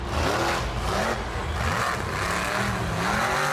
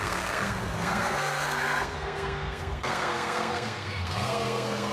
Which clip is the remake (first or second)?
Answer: second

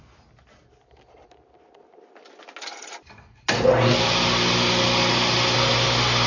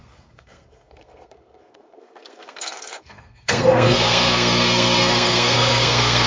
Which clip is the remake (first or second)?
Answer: second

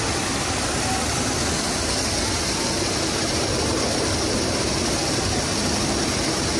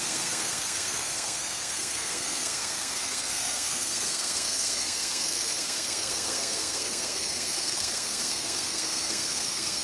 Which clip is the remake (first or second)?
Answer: second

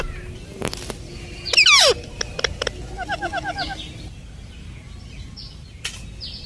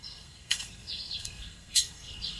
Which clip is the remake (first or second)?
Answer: second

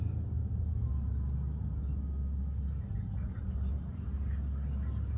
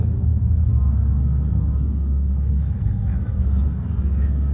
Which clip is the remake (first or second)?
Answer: second